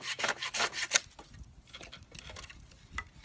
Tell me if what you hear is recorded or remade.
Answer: recorded